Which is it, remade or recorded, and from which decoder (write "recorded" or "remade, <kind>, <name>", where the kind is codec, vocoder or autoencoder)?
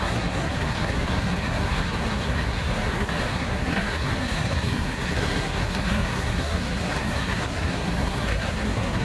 remade, codec, SNAC